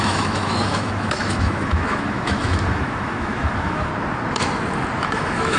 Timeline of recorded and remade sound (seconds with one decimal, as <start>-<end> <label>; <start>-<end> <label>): 0.0-3.9 remade; 3.9-5.0 recorded; 5.0-5.6 remade